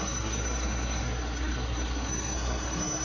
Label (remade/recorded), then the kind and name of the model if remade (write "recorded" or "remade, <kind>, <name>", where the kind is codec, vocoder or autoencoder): remade, codec, SNAC